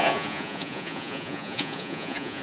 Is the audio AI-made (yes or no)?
yes